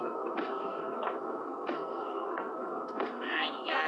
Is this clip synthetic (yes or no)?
yes